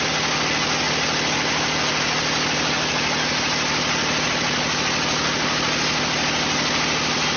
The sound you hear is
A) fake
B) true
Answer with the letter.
B